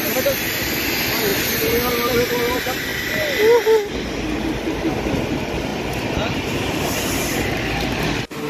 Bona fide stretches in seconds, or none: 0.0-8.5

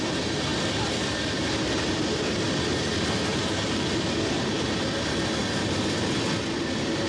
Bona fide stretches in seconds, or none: 0.0-0.5; 2.6-3.3; 6.0-7.1

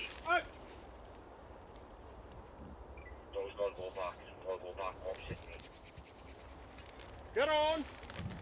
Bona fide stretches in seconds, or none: 3.5-8.4

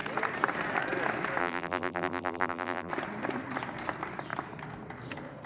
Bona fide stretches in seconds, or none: 0.0-1.4; 2.9-5.5

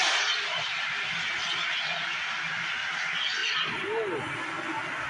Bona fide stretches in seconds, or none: 0.0-5.1

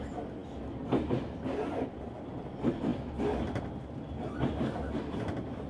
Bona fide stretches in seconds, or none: 0.0-5.7

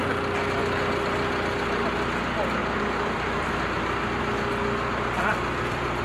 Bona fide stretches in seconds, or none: 0.0-2.6; 4.2-6.0

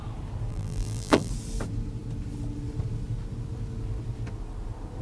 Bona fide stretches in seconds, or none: 0.0-0.5; 1.3-5.0